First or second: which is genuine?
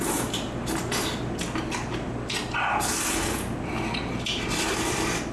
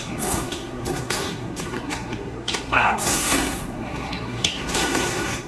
first